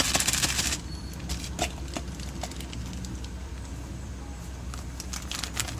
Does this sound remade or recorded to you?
recorded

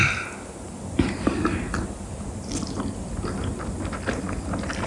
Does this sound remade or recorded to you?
recorded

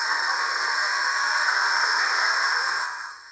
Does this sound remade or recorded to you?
remade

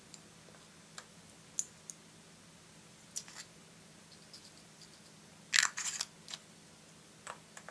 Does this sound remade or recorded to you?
recorded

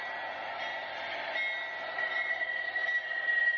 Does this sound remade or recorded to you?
recorded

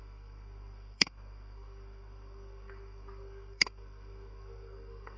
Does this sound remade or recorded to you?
remade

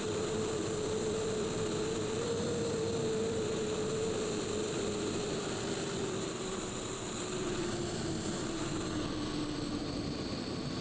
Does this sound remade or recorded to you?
recorded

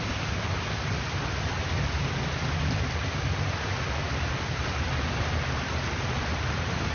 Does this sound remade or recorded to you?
recorded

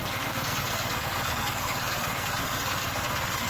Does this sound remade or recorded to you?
remade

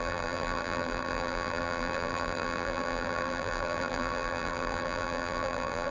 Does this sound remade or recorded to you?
remade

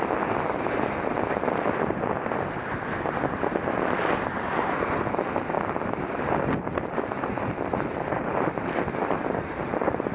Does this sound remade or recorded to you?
recorded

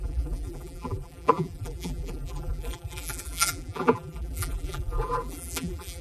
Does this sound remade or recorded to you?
remade